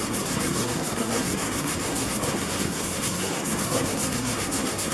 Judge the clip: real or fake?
fake